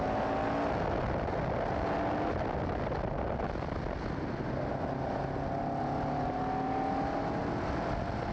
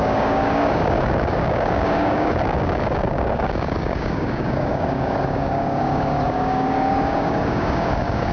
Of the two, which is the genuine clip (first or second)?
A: first